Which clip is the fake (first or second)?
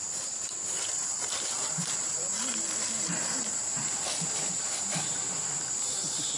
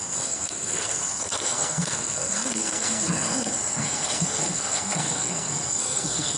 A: second